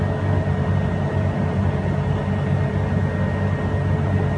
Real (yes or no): yes